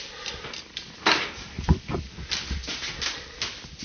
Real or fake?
real